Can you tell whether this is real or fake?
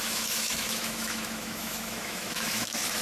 fake